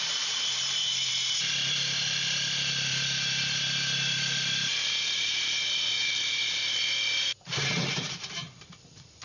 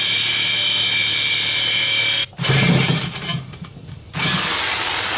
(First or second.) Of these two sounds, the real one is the second